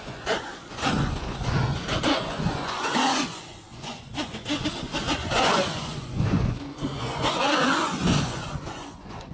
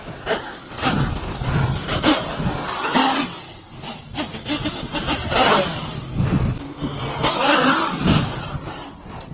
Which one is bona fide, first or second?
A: second